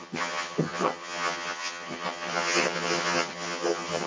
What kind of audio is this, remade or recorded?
remade